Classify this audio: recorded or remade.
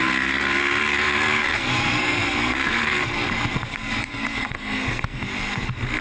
remade